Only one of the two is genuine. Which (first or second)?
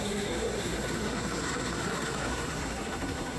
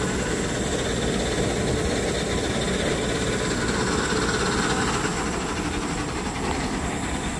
second